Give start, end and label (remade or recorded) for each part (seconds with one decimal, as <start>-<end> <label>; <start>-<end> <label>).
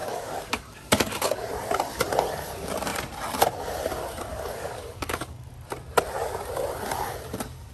0.0-1.4 remade; 1.4-4.3 recorded; 4.3-5.5 remade; 5.5-7.7 recorded